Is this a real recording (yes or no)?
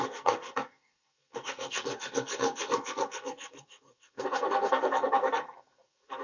no